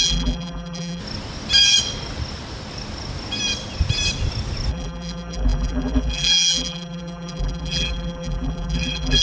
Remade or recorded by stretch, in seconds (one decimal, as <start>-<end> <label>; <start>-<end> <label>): 0.0-1.0 remade; 1.0-4.7 recorded; 4.7-9.2 remade